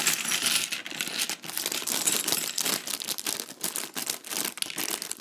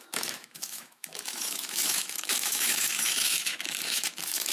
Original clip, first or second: first